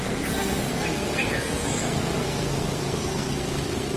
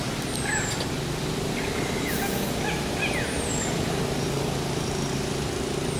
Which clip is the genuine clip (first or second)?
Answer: second